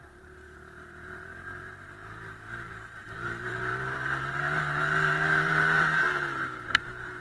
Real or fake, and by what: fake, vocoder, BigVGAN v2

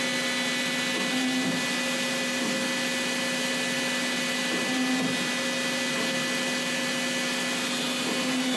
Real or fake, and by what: real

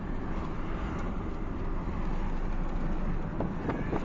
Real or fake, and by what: real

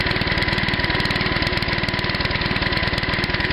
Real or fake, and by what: real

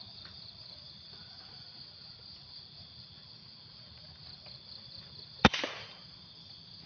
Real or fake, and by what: fake, vocoder, BigVGAN v2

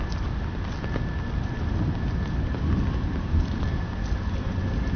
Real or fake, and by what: real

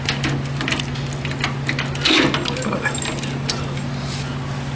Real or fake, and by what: real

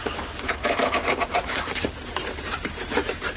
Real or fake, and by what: fake, vocoder, BigVGAN v2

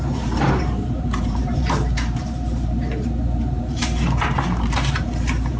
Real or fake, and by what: fake, vocoder, BigVGAN v2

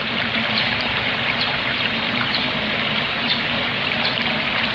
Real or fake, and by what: fake, vocoder, BigVGAN v2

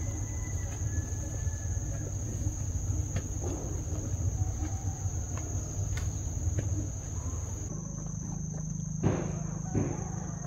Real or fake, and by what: real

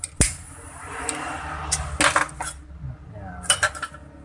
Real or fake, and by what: real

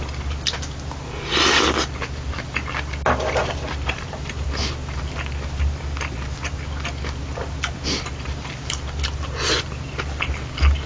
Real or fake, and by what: real